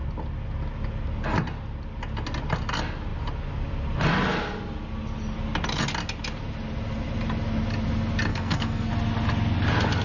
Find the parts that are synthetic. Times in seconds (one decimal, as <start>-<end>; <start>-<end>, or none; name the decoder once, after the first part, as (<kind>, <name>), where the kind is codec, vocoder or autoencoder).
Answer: 8.3-8.9 (codec, SNAC)

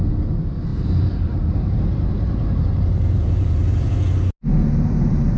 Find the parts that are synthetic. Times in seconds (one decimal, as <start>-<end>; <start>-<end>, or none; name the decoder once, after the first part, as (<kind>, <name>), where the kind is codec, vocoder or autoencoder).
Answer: 0.7-3.9 (vocoder, BigVGAN v2); 4.5-5.4

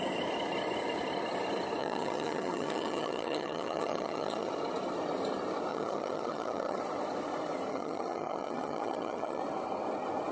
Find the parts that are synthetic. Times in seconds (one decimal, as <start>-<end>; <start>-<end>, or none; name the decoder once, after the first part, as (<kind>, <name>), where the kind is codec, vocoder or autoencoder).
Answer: 1.8-4.5 (vocoder, HiFi-GAN); 5.7-6.8; 7.7-9.4

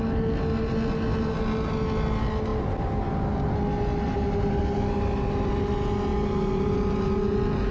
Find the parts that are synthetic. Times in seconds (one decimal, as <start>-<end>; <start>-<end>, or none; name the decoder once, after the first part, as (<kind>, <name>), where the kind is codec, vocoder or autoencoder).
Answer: none

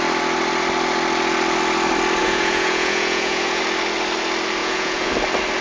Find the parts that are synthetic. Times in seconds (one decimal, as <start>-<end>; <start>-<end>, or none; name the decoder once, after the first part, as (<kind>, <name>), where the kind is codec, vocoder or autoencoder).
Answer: 2.2-3.6 (vocoder, Vocos); 4.6-5.1

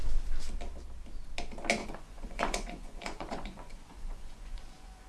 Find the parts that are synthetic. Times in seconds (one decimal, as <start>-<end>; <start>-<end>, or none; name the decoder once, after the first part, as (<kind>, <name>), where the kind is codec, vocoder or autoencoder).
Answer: 1.8-5.1 (vocoder, Vocos)

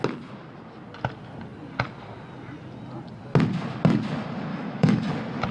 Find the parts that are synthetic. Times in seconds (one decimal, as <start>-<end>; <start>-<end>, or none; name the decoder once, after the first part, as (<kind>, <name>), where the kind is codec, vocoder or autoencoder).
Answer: 4.5-5.1 (autoencoder, DAC-VAE)

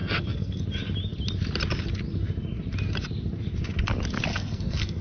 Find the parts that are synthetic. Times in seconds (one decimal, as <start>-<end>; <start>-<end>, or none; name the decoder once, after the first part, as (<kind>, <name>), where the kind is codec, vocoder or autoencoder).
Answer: 0.0-0.6 (codec, SNAC); 4.3-5.0